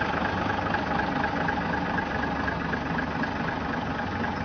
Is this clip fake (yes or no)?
no